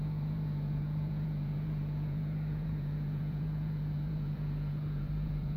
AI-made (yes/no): yes